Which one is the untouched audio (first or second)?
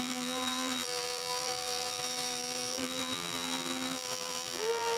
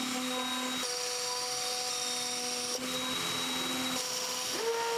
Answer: second